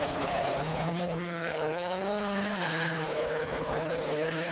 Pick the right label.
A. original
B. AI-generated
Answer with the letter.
B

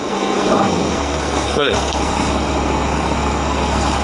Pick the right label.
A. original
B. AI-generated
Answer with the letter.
B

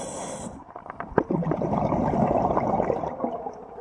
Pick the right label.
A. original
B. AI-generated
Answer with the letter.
A